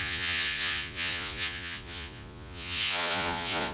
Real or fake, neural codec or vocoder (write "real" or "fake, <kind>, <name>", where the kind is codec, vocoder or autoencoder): fake, vocoder, Vocos